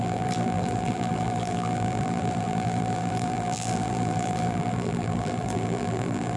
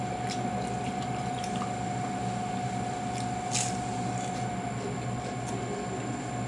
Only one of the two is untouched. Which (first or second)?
second